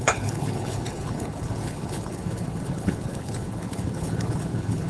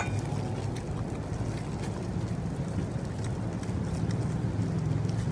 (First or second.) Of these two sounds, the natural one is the second